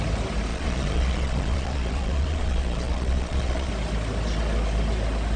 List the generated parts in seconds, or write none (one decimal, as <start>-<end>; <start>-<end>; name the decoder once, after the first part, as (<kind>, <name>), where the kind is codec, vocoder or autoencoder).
0.5-3.7 (vocoder, Vocos)